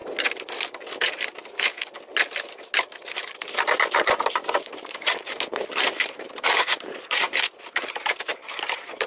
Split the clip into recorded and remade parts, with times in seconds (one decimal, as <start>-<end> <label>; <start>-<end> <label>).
0.0-4.0 recorded; 4.0-9.1 remade